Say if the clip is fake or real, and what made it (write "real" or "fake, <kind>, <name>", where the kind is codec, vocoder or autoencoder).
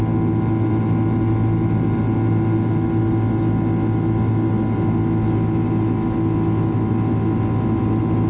real